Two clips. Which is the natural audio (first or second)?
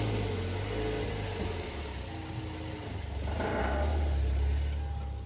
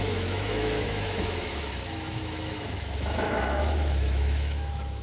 first